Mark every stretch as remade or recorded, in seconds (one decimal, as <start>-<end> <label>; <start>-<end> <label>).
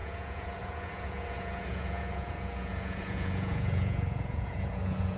0.0-5.2 remade